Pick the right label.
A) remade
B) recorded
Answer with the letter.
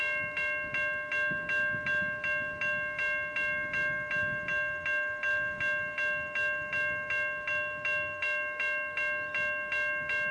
B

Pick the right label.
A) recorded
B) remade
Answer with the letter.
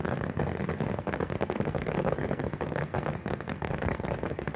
B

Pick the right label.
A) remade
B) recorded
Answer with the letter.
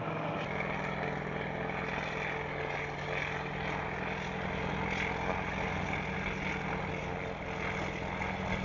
B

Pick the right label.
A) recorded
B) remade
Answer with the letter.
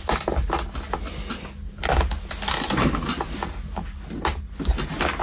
A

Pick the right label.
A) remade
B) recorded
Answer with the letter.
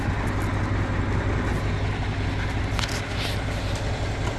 B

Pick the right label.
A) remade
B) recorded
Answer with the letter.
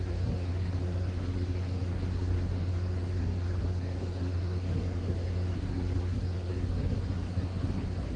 A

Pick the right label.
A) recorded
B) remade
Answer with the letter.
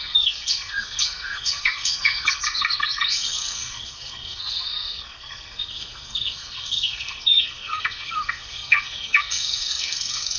B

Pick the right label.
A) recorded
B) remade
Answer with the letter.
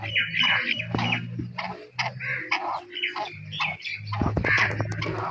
A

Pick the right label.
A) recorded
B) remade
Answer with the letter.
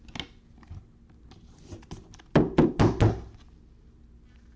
A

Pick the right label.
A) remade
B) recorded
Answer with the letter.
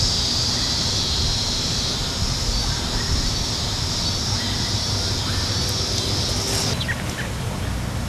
B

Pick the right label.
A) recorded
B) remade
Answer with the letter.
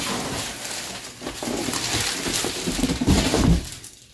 A